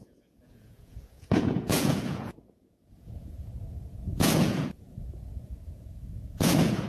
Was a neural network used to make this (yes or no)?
yes